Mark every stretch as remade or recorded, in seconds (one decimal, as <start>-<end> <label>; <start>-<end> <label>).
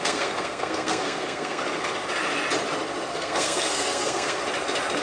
0.0-1.6 remade; 1.6-3.1 recorded; 3.1-4.4 remade; 4.4-5.0 recorded